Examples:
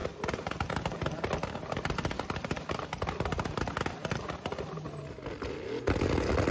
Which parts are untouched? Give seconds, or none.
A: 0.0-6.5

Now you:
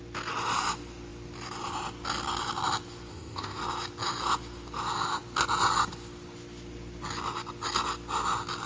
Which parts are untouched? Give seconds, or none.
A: 0.0-3.1; 3.6-8.7

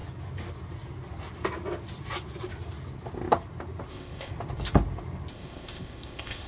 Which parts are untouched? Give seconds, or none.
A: 0.0-3.9; 4.3-5.3

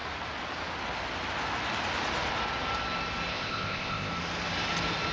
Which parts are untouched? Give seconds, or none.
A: 0.0-3.3; 4.1-5.1

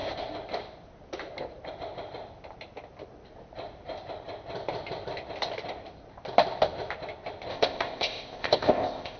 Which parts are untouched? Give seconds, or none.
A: 0.0-7.5

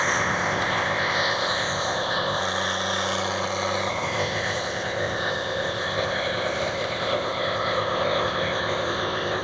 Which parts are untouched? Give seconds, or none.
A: 2.4-3.9

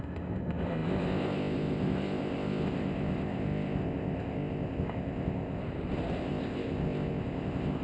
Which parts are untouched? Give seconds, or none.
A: 5.6-6.2